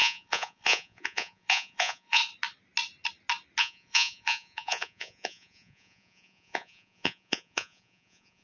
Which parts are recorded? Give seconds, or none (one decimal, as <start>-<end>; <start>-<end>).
2.2-3.6